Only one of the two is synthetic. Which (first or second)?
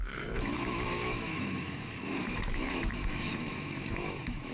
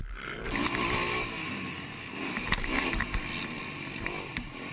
first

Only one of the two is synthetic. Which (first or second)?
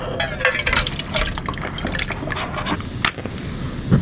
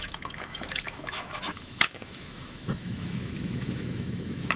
second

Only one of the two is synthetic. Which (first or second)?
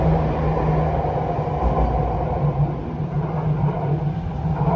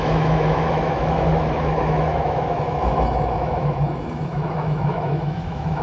second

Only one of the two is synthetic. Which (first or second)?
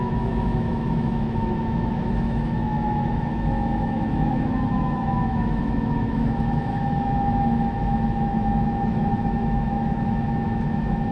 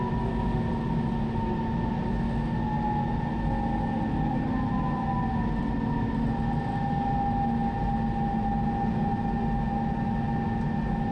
first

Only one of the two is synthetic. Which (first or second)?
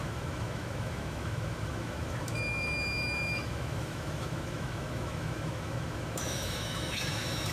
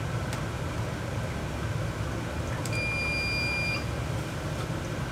first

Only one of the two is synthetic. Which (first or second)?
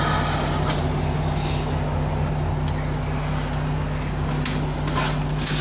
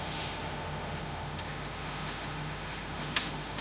second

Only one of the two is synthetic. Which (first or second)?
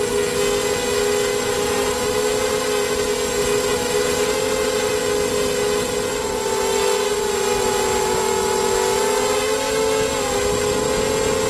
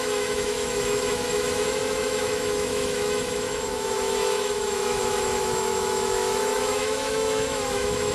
second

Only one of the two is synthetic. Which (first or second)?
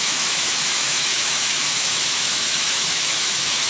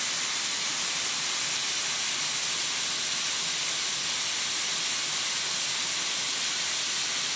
first